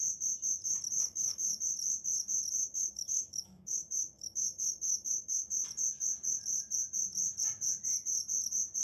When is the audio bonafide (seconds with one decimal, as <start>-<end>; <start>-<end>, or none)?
0.0-1.0; 1.6-2.6; 5.5-8.8